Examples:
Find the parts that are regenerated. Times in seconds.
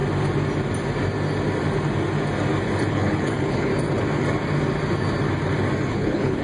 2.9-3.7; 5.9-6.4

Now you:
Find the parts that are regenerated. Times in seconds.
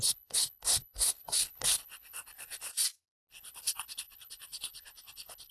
0.0-2.7; 3.3-5.5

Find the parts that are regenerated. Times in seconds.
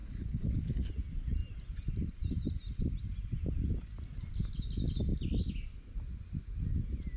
0.0-0.9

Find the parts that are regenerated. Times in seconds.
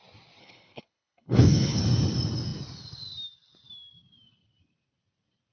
0.4-1.8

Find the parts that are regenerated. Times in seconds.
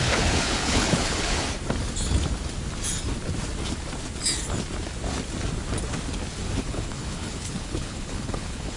0.0-1.4; 6.6-8.8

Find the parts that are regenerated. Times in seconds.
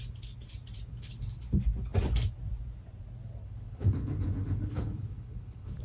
0.9-1.5; 3.4-5.8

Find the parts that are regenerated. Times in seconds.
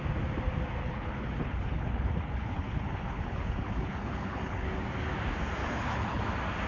0.8-4.7; 5.6-6.2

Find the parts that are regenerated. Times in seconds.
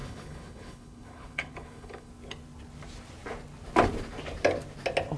0.0-2.1